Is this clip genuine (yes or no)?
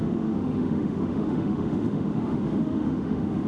no